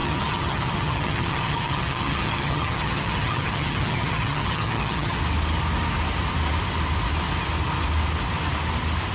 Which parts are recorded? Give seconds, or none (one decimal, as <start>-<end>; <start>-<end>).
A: 5.2-9.1